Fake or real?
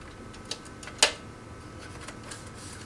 real